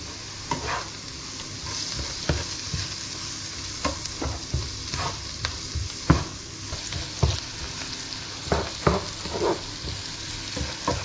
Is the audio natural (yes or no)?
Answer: yes